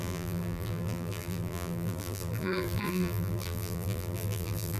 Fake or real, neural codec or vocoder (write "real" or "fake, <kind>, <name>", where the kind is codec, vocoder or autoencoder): fake, vocoder, BigVGAN v2